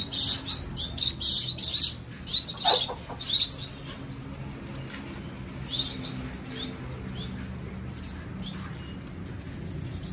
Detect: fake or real real